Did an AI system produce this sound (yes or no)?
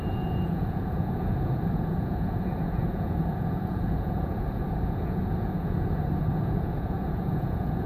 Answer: yes